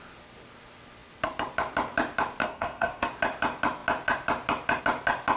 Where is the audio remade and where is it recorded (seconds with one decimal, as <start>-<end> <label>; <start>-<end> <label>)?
0.0-2.4 recorded; 2.4-3.1 remade; 3.1-5.4 recorded